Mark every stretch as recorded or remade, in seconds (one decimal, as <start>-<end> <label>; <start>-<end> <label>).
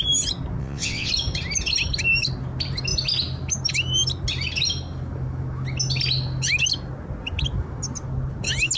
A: 0.0-0.6 recorded; 0.6-1.1 remade; 1.1-8.8 recorded